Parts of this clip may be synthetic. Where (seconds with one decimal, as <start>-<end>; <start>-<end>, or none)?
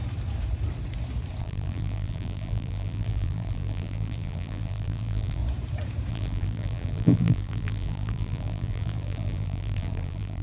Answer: 1.4-5.4; 6.1-10.4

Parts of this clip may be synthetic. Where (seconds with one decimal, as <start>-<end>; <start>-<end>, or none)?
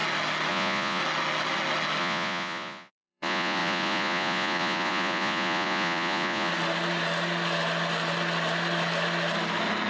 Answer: 0.5-1.0; 2.0-6.5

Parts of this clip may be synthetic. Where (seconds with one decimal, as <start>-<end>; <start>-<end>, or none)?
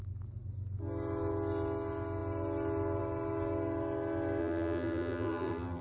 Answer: 4.4-5.8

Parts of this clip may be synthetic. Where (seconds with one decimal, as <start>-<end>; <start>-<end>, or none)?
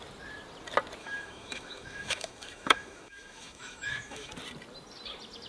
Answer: 1.0-4.3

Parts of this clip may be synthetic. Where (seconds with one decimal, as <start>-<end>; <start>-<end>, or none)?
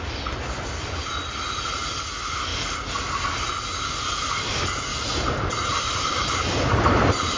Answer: 4.9-7.0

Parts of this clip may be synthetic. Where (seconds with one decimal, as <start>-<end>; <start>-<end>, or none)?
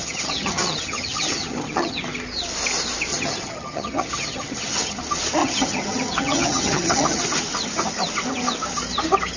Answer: 0.0-2.0; 3.1-5.0; 5.4-7.2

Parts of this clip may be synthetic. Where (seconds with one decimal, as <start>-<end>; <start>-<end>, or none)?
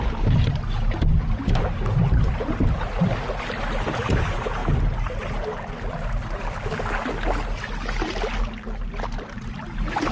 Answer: none